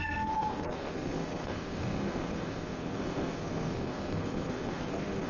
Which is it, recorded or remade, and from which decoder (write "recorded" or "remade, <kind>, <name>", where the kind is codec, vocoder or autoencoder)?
remade, codec, SNAC